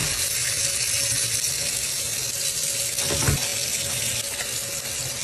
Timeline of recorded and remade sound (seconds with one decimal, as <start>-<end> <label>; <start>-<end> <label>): 0.0-5.2 recorded